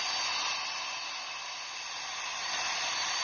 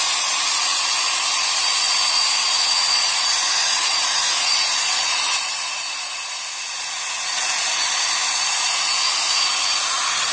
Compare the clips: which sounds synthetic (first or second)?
second